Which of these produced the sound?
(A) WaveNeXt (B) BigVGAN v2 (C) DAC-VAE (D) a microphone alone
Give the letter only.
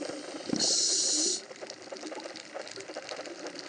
D